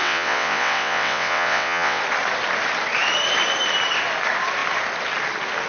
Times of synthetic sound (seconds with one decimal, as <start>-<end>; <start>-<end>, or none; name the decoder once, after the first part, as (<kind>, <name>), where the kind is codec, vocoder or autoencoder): 0.0-2.0 (vocoder, WaveNeXt)